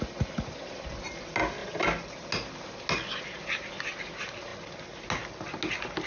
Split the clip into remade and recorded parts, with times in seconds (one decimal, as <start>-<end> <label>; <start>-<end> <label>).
0.0-1.6 recorded; 1.6-2.3 remade; 2.3-6.1 recorded